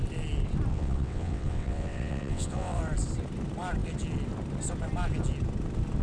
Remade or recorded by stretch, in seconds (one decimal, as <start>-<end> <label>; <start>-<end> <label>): 0.0-0.7 recorded; 0.7-2.8 remade; 2.8-6.0 recorded